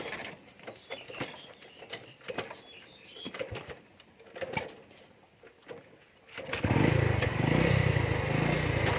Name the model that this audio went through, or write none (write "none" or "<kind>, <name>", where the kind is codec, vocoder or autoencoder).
none